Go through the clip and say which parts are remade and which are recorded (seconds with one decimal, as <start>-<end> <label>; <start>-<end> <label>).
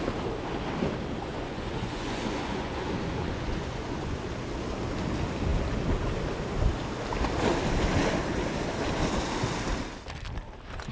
0.0-1.3 recorded; 1.3-4.2 remade; 4.2-10.9 recorded